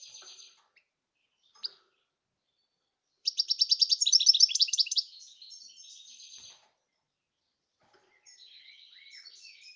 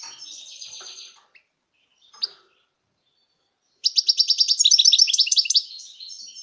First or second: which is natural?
second